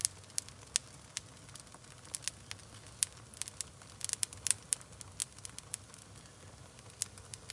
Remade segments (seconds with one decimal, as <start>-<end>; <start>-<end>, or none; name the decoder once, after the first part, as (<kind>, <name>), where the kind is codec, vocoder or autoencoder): none

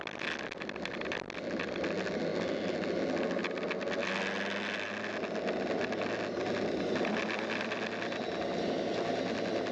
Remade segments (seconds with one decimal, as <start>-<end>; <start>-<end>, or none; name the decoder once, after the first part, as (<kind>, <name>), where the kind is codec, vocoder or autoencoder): none

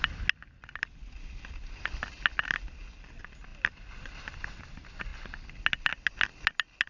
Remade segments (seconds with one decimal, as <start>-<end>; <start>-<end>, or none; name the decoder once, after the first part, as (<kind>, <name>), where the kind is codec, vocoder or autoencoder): none

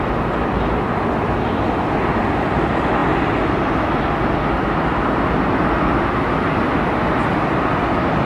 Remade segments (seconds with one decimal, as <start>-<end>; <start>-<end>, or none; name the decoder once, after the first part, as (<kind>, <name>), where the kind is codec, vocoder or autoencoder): none

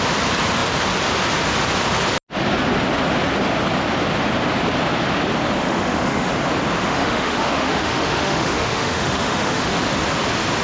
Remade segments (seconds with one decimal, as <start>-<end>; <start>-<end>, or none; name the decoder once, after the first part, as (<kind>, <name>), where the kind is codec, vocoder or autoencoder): 5.6-6.3 (autoencoder, DAC-VAE); 6.8-9.8

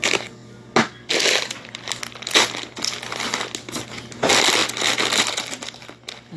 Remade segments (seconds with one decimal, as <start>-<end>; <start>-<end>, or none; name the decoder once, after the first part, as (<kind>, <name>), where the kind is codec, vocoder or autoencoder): none

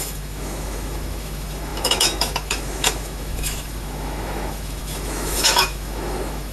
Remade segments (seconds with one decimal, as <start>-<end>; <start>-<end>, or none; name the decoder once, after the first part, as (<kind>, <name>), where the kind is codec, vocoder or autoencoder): 0.0-6.5 (autoencoder, DAC-VAE)

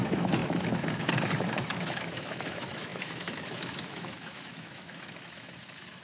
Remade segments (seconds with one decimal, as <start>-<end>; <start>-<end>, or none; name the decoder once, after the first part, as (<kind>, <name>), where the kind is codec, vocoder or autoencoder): 0.0-6.0 (autoencoder, DAC-VAE)